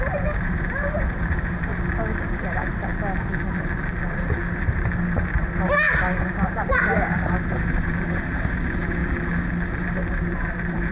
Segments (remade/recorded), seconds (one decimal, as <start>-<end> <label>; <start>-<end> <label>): 0.0-1.7 remade; 1.7-2.4 recorded; 2.4-2.9 remade; 2.9-4.6 recorded; 4.6-9.0 remade; 9.0-9.8 recorded; 9.8-10.9 remade